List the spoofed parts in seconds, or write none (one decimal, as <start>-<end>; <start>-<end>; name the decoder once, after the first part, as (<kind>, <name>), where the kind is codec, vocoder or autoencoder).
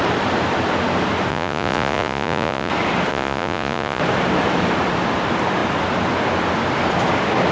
1.3-2.7 (vocoder, Vocos); 3.1-4.0